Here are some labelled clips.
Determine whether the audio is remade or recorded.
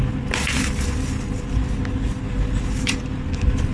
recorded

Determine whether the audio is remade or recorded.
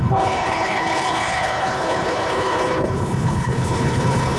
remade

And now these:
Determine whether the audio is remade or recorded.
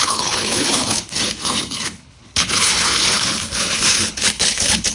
remade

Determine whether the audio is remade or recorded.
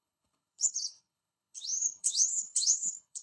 remade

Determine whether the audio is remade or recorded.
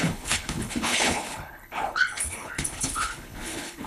remade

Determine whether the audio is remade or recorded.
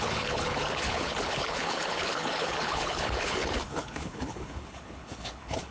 remade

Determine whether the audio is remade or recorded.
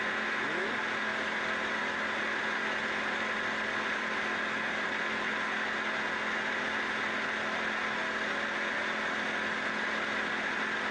recorded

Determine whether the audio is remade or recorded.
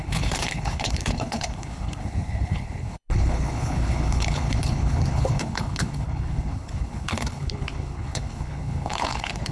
remade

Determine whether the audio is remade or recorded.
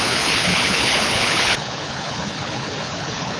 remade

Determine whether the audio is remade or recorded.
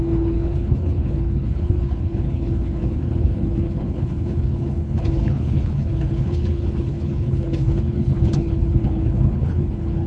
remade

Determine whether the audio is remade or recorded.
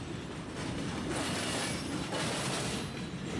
recorded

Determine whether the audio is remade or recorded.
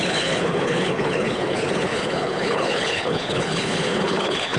remade